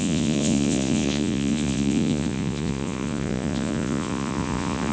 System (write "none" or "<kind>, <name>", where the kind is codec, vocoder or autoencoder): vocoder, Vocos